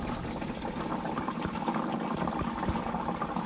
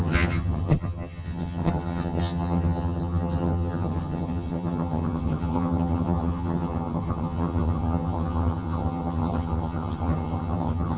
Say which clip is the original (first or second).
first